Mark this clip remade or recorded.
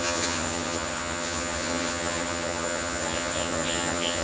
remade